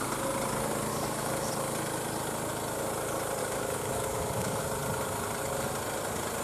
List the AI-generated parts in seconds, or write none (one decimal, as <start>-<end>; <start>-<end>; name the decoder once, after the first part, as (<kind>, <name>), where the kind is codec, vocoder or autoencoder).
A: 0.9-1.5 (codec, DAC); 3.4-4.6